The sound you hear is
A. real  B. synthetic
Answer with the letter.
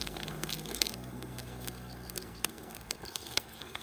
B